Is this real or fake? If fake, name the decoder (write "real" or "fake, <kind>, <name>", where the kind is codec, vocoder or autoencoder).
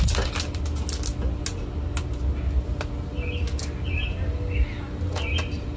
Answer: real